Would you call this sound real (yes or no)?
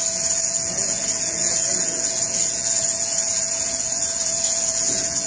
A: no